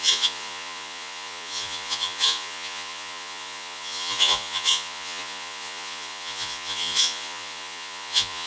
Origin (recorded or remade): remade